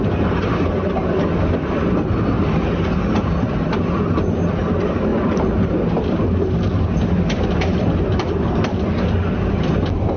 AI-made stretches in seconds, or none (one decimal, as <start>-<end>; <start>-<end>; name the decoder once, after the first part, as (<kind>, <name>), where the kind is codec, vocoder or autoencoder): none